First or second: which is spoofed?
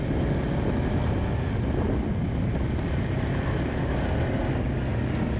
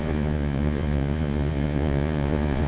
second